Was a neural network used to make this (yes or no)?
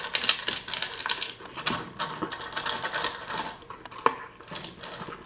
no